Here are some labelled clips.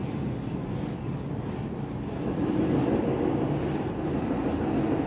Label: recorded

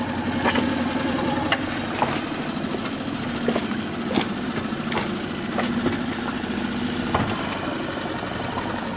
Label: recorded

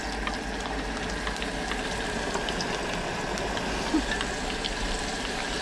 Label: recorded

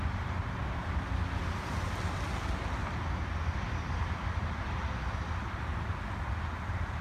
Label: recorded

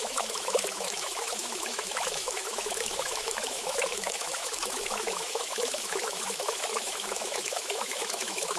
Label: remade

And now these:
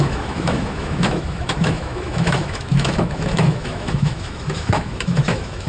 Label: remade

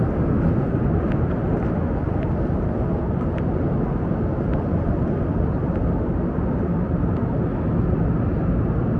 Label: recorded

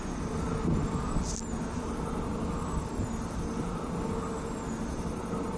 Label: recorded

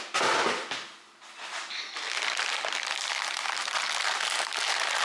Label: recorded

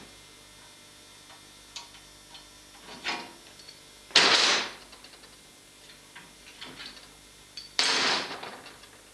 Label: recorded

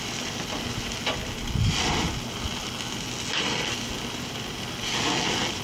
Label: recorded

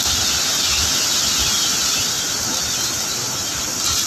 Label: recorded